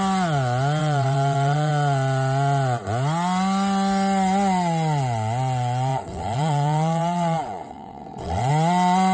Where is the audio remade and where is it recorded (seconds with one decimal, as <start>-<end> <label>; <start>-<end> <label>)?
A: 0.0-0.8 recorded; 0.8-1.7 remade; 1.7-5.9 recorded; 5.9-8.5 remade; 8.5-9.1 recorded